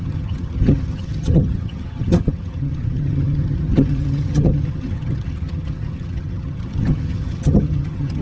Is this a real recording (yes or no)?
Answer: no